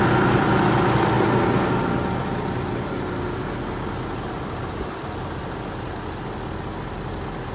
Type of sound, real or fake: real